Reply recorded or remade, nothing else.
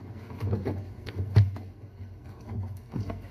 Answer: remade